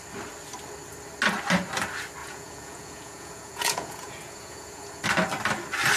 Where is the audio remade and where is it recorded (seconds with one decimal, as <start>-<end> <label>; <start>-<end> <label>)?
0.0-2.2 recorded; 2.2-5.0 remade; 5.0-6.0 recorded